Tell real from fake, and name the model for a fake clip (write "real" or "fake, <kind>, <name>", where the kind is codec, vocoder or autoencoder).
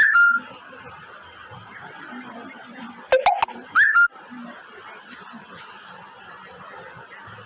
real